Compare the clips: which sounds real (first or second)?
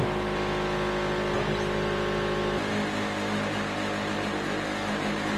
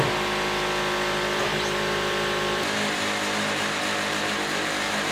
first